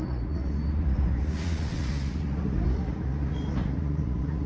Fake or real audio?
fake